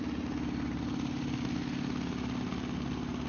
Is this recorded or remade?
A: recorded